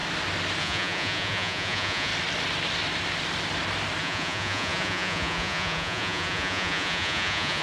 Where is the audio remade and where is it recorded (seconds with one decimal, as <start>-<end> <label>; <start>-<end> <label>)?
0.0-0.6 recorded; 0.6-2.1 remade; 2.1-4.0 recorded; 4.0-7.6 remade